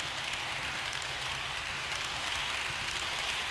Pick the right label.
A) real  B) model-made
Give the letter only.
A